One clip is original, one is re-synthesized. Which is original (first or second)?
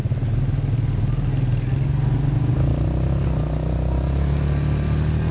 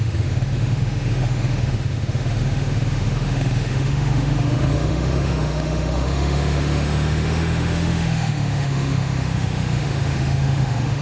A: first